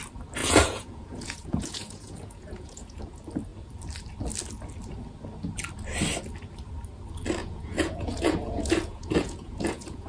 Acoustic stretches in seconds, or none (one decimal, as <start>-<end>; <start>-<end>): 0.0-0.4; 3.0-7.4